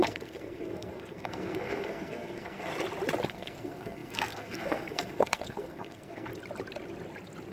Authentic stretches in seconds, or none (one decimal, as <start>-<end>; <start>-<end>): 2.7-3.3; 6.3-7.5